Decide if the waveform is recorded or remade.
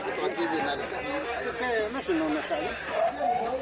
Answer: recorded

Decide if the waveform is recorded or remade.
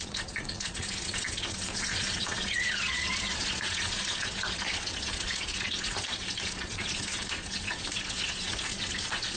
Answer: remade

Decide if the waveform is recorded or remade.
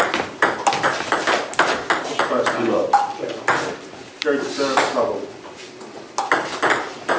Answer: recorded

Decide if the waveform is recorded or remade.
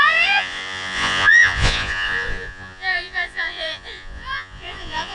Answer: remade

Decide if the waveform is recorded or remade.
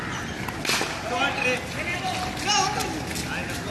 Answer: recorded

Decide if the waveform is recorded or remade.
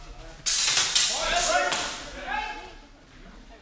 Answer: recorded